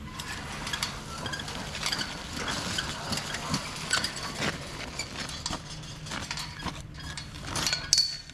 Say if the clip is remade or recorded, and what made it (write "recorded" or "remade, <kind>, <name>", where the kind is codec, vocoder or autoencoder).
recorded